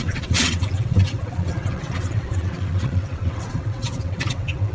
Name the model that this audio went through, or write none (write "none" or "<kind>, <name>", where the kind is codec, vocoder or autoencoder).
vocoder, WaveNeXt